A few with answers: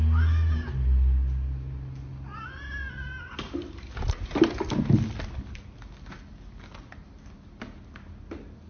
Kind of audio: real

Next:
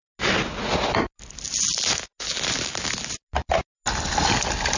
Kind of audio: real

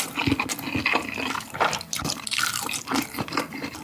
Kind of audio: real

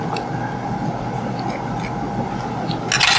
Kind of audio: real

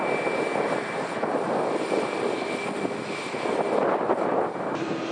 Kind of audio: real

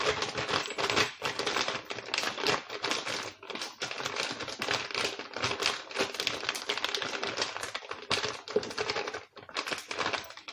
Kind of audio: real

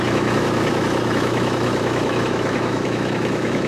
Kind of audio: fake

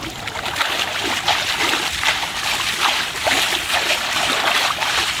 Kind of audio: real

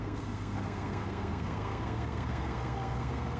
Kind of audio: fake